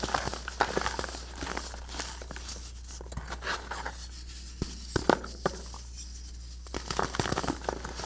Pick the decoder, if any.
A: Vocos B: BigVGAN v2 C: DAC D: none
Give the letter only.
D